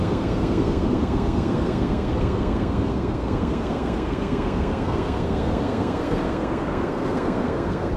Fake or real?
fake